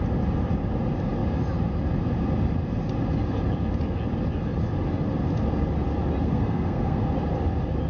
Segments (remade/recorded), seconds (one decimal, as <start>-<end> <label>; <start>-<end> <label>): 0.0-6.2 recorded; 6.2-7.0 remade; 7.0-7.9 recorded